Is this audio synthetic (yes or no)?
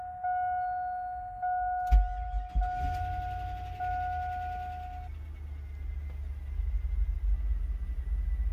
no